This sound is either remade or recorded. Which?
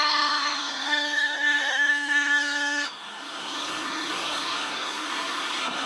remade